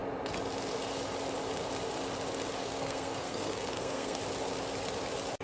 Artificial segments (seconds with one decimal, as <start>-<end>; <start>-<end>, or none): 2.6-4.2